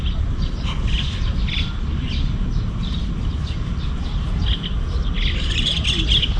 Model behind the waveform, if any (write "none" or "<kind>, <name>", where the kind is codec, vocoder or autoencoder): none